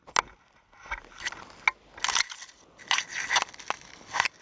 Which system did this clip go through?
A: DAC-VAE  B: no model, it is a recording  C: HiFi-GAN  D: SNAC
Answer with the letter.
B